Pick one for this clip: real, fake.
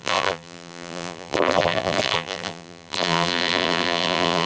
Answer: fake